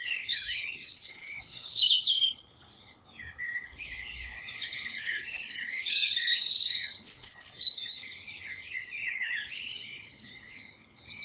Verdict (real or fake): fake